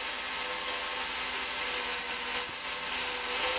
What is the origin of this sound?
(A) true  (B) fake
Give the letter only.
A